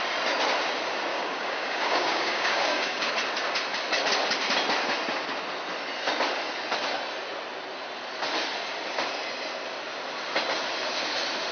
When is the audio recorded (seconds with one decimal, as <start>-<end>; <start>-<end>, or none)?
0.0-1.1; 3.1-11.5